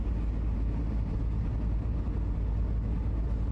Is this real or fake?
real